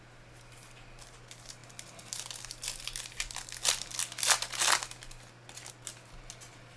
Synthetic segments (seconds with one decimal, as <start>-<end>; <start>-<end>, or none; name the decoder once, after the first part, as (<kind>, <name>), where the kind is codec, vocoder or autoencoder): none